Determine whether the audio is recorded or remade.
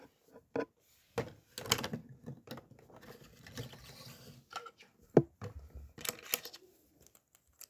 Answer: recorded